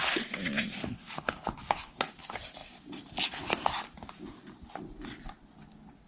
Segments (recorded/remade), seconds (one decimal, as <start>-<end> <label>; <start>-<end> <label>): 0.0-0.8 recorded; 0.8-2.1 remade; 2.1-6.1 recorded